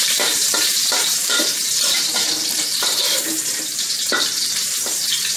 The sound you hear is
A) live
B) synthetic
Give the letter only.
B